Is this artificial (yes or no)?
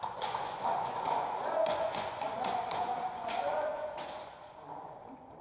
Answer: yes